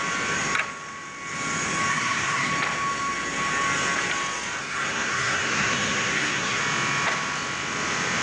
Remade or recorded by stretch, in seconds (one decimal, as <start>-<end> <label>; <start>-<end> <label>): 0.0-1.9 recorded; 1.9-2.5 remade; 2.5-4.6 recorded; 4.6-6.6 remade; 6.6-8.2 recorded